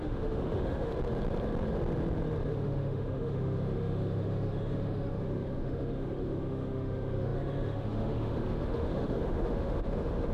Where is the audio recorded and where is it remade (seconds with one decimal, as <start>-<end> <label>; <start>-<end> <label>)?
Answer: 0.0-0.9 remade; 0.9-2.5 recorded; 2.5-10.3 remade